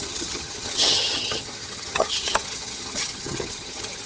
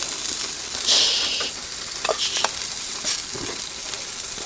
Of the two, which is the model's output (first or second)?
first